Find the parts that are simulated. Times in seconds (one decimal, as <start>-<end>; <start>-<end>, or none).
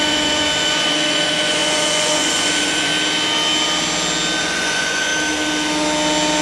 0.0-2.9; 4.4-5.1